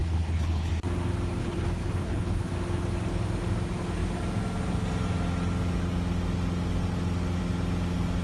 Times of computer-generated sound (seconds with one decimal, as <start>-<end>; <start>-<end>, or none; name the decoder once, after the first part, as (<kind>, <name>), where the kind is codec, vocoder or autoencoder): 0.0-0.7 (codec, HILCodec); 1.4-2.5